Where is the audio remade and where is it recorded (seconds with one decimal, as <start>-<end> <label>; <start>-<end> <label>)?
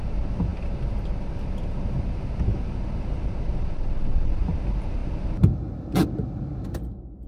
0.0-7.3 recorded